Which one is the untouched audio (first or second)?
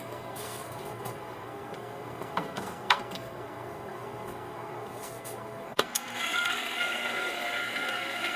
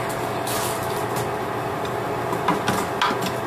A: second